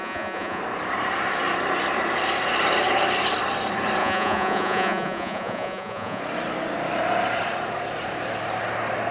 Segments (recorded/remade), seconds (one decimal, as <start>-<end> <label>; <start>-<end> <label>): 0.0-0.6 remade; 0.6-4.0 recorded; 4.0-6.2 remade; 6.2-9.1 recorded